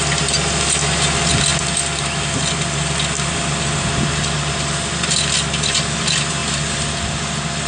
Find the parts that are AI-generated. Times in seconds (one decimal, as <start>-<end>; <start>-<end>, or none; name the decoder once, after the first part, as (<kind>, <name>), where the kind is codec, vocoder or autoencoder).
none